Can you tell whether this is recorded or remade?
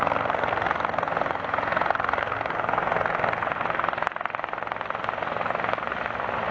recorded